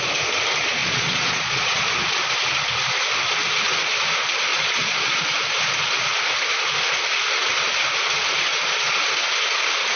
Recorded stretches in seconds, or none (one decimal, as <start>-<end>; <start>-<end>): 0.0-0.8; 1.8-4.5; 5.2-10.0